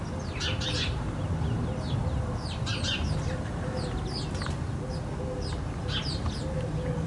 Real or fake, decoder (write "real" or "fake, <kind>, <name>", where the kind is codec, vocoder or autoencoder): real